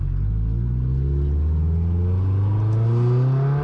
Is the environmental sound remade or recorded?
recorded